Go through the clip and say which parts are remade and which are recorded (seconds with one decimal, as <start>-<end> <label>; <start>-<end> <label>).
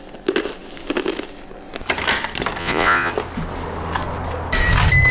0.0-2.6 recorded; 2.6-3.1 remade; 3.1-5.1 recorded